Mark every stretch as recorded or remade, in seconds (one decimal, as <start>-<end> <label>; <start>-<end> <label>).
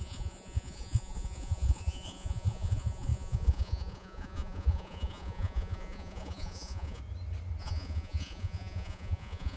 0.0-7.0 remade; 7.0-7.6 recorded; 7.6-9.6 remade